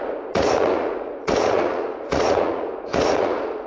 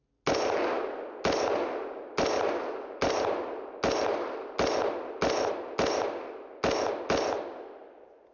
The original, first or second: second